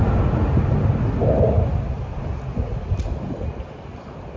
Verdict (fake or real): real